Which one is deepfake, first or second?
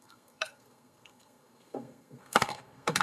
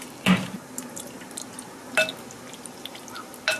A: first